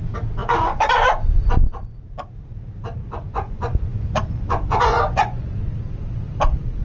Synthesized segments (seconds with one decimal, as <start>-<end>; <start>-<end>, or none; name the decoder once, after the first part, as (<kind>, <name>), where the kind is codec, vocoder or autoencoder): 0.4-1.2 (vocoder, Vocos); 3.0-5.6